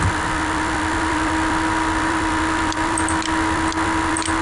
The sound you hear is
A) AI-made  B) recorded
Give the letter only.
A